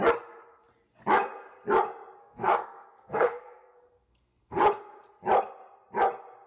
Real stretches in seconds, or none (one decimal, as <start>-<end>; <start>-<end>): 0.0-2.2; 4.6-6.5